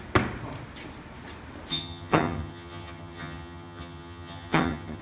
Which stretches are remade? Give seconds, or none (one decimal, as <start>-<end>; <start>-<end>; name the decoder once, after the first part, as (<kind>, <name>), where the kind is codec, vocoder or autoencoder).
1.7-5.0 (vocoder, HiFi-GAN)